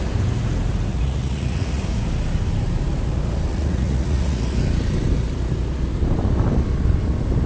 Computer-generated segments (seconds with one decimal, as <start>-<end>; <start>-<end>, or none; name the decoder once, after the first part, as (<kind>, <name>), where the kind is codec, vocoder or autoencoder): 0.9-1.8 (vocoder, Vocos); 3.5-4.6

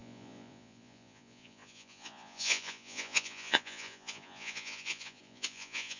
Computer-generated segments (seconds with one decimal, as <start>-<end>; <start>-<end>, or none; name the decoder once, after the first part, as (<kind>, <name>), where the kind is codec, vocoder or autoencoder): 0.0-6.0 (vocoder, Vocos)

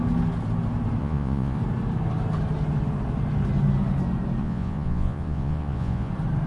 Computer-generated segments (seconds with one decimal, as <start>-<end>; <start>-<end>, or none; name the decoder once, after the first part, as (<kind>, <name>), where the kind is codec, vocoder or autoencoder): 1.0-1.6 (vocoder, Vocos); 4.4-6.1

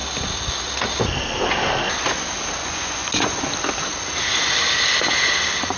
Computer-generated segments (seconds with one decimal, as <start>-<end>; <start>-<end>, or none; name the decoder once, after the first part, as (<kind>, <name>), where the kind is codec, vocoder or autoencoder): 2.6-3.4 (vocoder, Vocos)

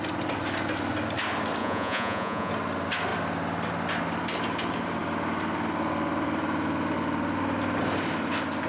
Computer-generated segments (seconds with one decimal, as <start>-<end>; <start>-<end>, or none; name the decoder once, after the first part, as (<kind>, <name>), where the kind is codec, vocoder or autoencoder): 1.6-2.5 (vocoder, Vocos)

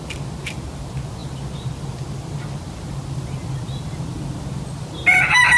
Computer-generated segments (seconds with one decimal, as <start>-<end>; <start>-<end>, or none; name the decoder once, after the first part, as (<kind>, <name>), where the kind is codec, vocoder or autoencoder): none

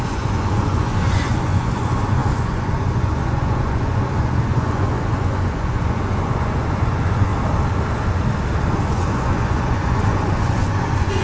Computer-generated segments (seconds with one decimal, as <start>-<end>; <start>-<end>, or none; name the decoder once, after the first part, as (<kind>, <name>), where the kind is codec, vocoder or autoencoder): 0.0-7.3 (vocoder, Vocos); 8.7-11.2